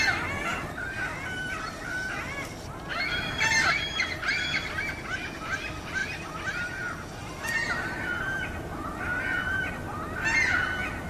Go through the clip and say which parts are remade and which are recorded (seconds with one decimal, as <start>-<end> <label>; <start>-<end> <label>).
0.0-11.1 recorded